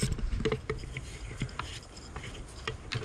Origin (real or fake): real